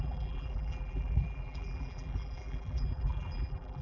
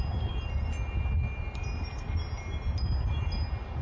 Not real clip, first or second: first